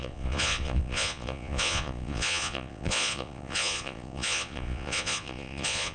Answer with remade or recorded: remade